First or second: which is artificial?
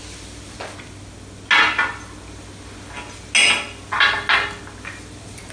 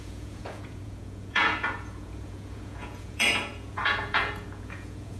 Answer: second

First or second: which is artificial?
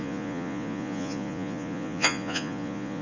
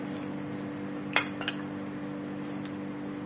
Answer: first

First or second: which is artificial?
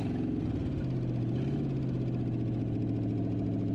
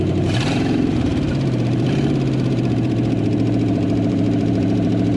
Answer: second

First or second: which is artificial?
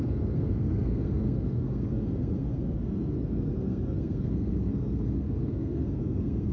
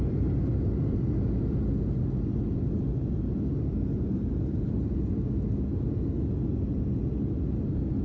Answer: first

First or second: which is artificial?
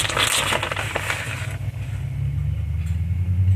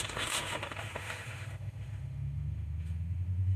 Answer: second